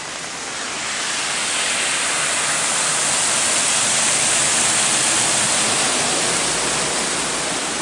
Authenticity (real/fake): real